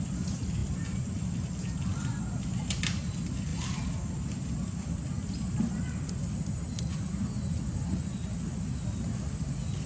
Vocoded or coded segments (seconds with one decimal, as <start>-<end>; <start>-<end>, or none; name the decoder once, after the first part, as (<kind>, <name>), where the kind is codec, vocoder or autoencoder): none